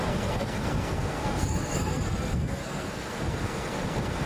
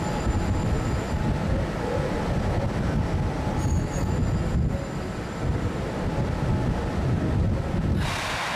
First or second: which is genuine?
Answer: second